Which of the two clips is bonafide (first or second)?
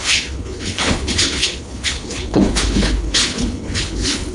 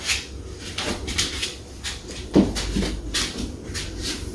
second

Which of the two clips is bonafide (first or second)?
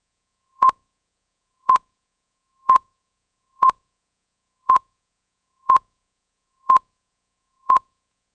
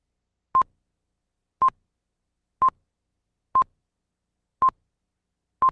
second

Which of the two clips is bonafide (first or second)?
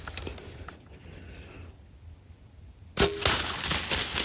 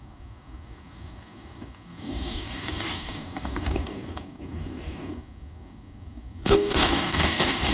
first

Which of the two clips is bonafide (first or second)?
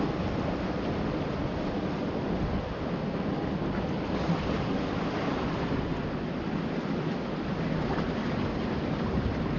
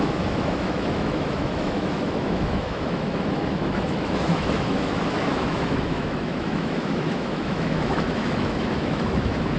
first